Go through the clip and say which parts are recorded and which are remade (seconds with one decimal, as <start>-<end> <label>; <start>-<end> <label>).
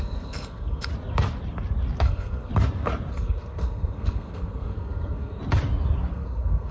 0.0-0.9 remade; 0.9-2.0 recorded; 2.0-2.5 remade; 2.5-3.1 recorded; 3.1-5.4 remade; 5.4-6.1 recorded; 6.1-6.7 remade